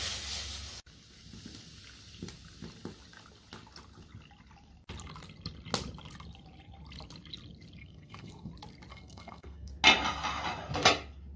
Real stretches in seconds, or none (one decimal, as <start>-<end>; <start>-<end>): 0.0-7.8; 8.5-8.9; 9.7-11.4